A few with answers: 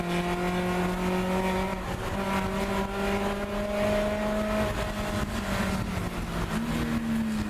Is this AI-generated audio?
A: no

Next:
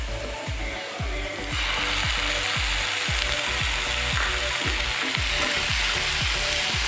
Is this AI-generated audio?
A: no